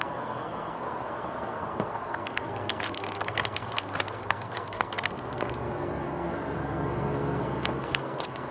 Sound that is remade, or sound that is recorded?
remade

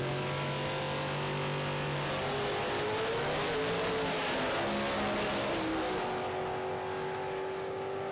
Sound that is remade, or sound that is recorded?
recorded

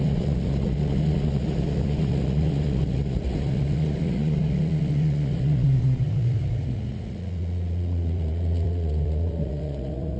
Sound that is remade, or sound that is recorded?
remade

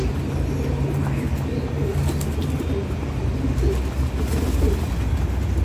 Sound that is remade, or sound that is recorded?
recorded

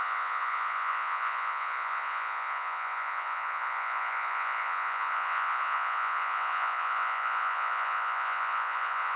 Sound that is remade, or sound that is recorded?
remade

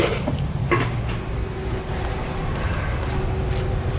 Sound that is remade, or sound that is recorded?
recorded